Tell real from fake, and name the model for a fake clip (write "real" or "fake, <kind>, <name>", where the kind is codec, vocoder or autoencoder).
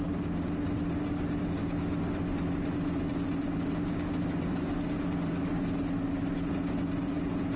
real